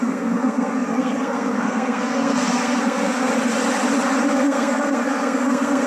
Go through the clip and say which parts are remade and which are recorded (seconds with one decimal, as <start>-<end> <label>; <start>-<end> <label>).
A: 0.0-3.3 remade; 3.3-4.3 recorded; 4.3-5.9 remade